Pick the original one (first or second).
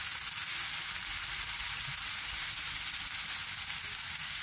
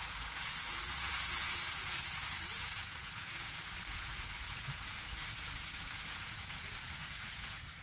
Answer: first